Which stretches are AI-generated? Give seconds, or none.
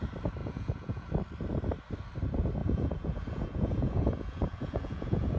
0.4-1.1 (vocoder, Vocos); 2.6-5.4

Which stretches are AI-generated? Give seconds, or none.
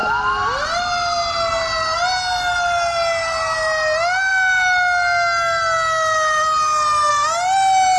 none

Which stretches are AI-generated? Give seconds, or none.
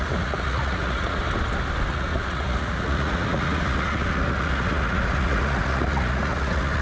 0.0-1.2 (vocoder, Vocos); 1.9-6.8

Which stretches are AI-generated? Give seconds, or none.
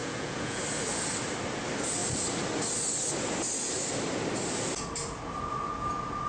0.0-0.6 (vocoder, Vocos)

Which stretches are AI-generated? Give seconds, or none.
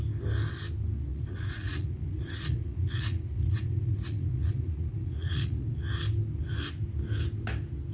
1.1-5.7 (vocoder, Vocos)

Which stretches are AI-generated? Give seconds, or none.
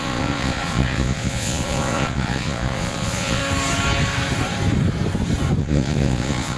0.0-3.4 (vocoder, Vocos); 5.6-6.6